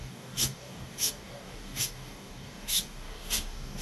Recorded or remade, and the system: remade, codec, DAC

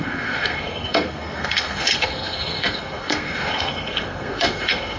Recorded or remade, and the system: remade, codec, SNAC